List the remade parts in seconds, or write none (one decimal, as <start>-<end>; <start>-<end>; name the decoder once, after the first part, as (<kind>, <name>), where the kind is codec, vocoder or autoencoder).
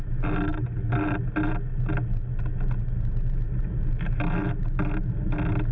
none